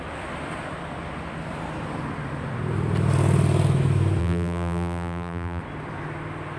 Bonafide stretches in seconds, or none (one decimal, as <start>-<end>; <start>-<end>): 0.0-4.2; 5.6-6.6